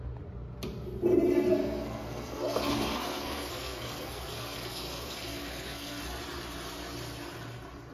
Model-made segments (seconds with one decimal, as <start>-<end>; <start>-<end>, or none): 1.6-6.0